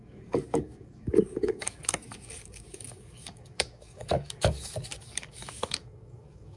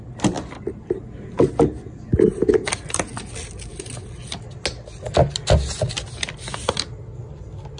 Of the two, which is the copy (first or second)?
first